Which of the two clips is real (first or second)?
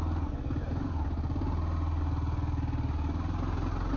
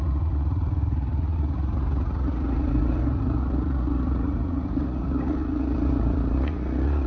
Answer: first